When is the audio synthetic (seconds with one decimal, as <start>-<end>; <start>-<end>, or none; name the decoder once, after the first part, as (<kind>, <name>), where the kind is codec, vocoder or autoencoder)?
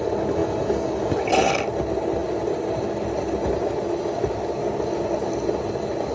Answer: none